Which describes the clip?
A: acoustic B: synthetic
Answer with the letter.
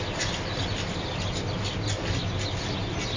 A